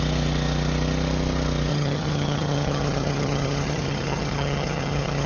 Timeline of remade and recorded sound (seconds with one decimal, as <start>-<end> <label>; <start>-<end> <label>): 0.0-1.7 recorded; 1.7-5.3 remade